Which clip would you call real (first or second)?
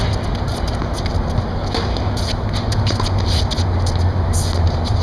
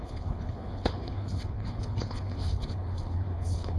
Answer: first